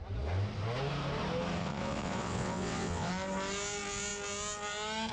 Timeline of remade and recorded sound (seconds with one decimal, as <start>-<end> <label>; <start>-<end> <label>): 0.0-1.6 recorded; 1.6-3.1 remade; 3.1-5.1 recorded